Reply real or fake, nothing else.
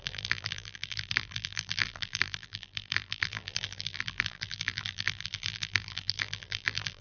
fake